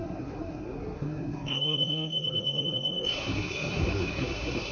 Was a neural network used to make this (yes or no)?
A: yes